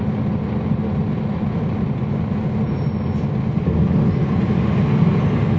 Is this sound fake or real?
real